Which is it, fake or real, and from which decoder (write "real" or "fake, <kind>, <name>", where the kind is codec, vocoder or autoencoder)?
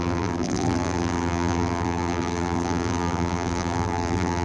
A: fake, vocoder, BigVGAN v2